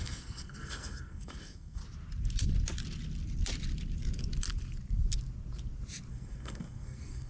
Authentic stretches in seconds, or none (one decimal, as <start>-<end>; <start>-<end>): 1.8-6.1